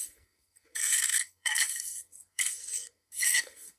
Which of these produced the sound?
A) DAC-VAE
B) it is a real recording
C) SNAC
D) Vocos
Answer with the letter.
C